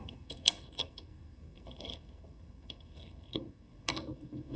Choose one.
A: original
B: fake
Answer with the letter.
B